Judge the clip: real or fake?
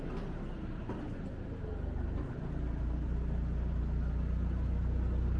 real